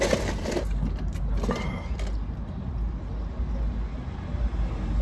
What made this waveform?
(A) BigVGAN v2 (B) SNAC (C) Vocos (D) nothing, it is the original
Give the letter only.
D